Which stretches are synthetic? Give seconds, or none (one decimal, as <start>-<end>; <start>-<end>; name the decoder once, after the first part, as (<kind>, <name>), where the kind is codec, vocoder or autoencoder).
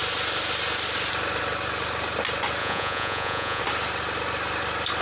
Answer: 2.6-3.6 (vocoder, Vocos)